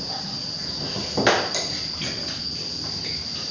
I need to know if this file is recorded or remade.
recorded